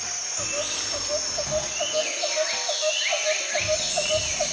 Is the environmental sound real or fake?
real